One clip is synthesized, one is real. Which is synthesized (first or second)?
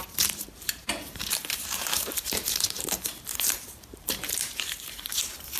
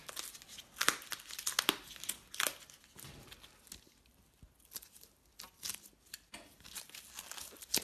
first